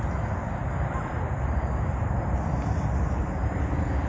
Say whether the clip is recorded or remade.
recorded